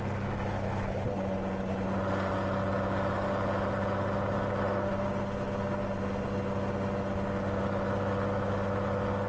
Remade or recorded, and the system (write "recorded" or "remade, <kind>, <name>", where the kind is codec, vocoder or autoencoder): recorded